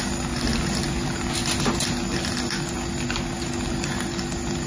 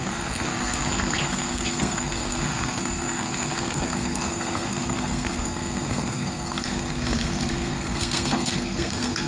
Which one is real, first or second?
first